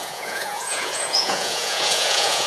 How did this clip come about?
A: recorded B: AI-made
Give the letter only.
B